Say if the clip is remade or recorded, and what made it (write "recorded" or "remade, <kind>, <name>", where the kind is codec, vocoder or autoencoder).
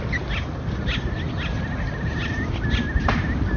recorded